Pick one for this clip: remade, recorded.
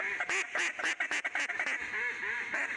recorded